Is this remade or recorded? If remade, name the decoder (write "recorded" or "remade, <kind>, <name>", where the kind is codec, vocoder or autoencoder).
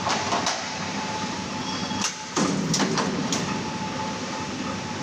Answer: remade, vocoder, BigVGAN v2